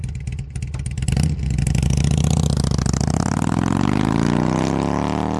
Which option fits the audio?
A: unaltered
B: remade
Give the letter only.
A